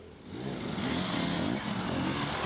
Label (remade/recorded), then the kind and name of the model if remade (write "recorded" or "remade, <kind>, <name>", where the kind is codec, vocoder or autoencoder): recorded